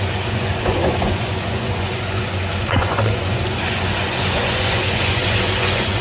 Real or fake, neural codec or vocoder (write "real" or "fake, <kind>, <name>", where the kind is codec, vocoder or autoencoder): fake, vocoder, Vocos